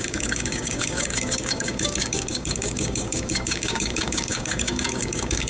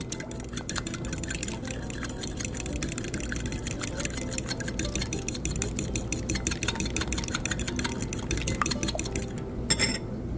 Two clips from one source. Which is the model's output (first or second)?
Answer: first